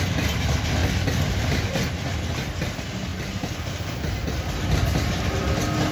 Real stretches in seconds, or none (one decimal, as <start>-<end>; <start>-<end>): 0.0-3.1; 3.7-5.9